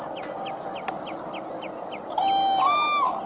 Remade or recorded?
recorded